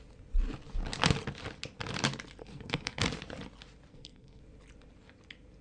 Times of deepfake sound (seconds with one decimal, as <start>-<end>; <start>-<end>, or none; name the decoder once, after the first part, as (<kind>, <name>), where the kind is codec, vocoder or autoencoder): 2.4-3.0 (codec, SNAC); 3.9-4.4